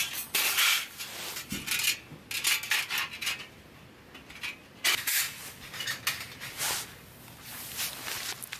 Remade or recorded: recorded